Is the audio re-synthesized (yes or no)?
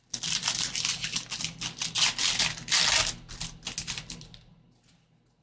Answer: no